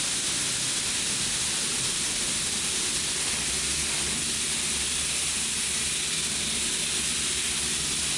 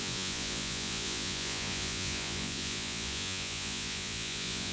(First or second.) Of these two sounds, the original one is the first